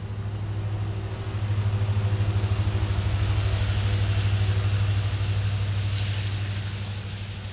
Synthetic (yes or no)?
no